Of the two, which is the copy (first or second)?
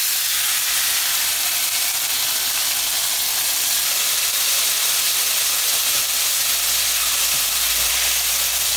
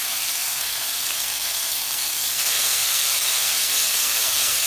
second